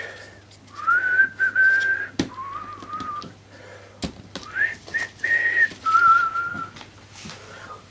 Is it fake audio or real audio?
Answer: real